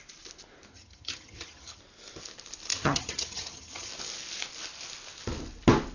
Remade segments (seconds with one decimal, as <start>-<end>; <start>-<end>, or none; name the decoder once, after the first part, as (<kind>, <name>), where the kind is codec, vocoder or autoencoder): 0.7-1.8 (vocoder, HiFi-GAN); 2.7-3.9